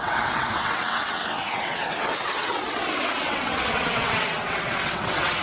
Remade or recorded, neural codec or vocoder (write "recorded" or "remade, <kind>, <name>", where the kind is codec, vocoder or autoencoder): remade, vocoder, WaveNeXt